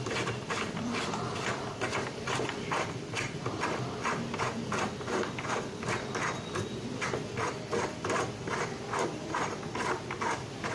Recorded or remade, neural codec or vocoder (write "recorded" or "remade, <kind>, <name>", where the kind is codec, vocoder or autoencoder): remade, vocoder, BigVGAN v2